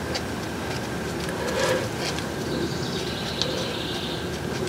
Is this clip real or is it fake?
real